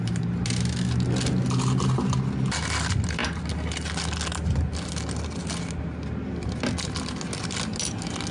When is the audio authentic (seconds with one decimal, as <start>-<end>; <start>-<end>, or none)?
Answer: 0.0-8.3